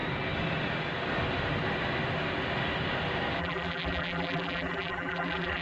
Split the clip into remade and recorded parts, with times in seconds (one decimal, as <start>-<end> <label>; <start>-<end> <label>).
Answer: 0.0-3.4 recorded; 3.4-5.6 remade